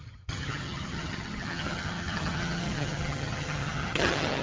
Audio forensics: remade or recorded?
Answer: remade